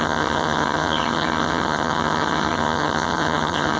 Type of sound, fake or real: fake